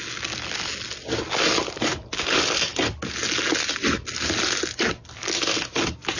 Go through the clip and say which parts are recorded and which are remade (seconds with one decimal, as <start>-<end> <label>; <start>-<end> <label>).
0.0-6.2 recorded

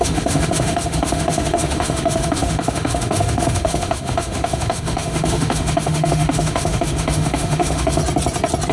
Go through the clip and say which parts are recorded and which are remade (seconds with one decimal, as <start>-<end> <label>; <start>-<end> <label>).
0.0-8.0 remade; 8.0-8.7 recorded

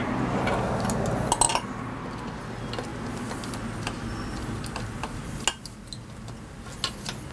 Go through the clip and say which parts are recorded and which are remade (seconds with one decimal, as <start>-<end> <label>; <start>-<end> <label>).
0.0-7.3 recorded

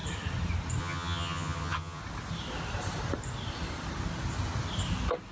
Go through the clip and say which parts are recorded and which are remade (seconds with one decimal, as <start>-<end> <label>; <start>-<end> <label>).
0.0-0.8 recorded; 0.8-2.0 remade; 2.0-5.3 recorded

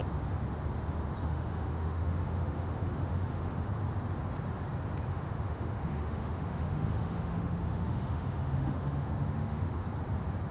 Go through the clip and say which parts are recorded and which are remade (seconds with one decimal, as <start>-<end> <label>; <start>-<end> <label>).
0.0-1.2 recorded; 1.2-3.7 remade; 3.7-5.1 recorded; 5.1-9.9 remade; 9.9-10.5 recorded

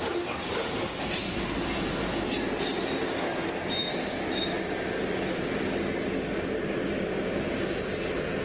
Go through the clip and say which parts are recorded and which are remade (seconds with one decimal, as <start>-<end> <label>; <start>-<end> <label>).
0.0-3.8 recorded; 3.8-4.6 remade; 4.6-8.4 recorded

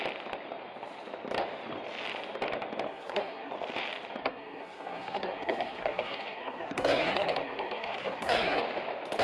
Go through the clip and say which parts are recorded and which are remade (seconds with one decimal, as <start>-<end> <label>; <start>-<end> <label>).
0.0-2.9 recorded; 2.9-3.5 remade; 3.5-4.2 recorded; 4.2-8.6 remade; 8.6-9.2 recorded

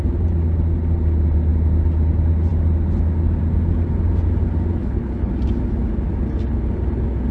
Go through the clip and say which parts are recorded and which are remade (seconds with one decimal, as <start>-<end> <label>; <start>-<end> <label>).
0.0-4.8 recorded; 4.8-5.3 remade; 5.3-7.3 recorded